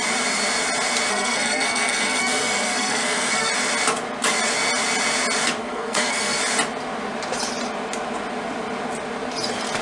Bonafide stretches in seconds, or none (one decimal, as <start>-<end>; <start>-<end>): 0.0-1.1; 3.5-5.6; 6.4-9.8